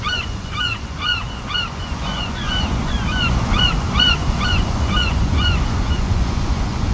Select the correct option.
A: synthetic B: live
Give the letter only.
A